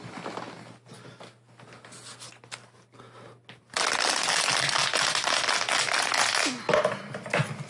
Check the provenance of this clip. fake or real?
real